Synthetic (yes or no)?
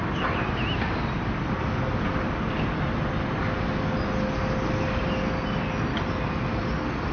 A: no